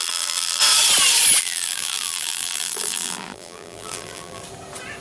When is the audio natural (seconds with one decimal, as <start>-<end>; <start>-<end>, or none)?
0.6-1.4; 4.4-5.0